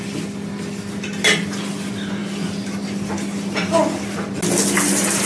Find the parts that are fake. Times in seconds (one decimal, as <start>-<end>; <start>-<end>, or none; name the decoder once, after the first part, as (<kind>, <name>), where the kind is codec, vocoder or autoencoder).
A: none